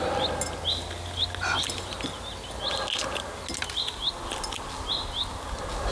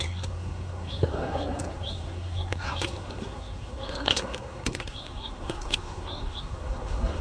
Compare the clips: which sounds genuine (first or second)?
first